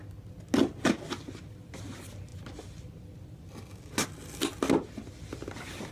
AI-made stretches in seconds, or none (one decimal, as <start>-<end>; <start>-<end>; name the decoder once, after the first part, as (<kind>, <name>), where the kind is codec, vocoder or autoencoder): none